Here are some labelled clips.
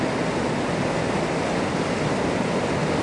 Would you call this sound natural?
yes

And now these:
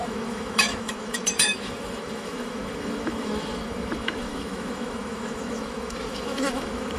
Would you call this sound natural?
no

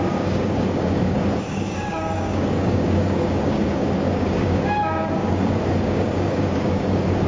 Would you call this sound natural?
no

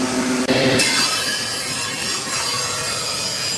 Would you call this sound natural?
yes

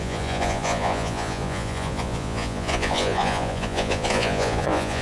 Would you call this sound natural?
no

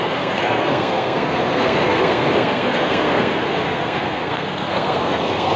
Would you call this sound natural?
no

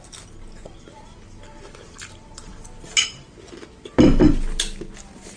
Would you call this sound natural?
yes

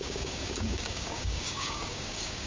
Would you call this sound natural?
no